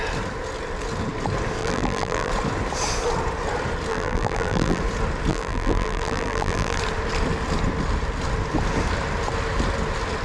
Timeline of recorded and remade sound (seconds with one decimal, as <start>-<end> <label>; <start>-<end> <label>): 0.0-1.6 recorded; 1.6-2.3 remade; 2.3-3.9 recorded; 3.9-4.8 remade; 4.8-5.3 recorded; 5.3-6.8 remade; 6.8-10.2 recorded